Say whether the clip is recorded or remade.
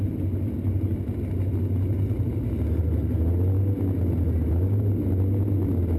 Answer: recorded